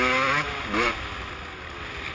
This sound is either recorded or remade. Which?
recorded